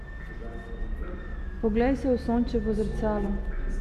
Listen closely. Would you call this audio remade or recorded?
recorded